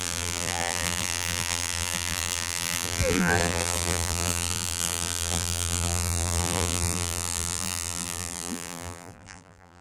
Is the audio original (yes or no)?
no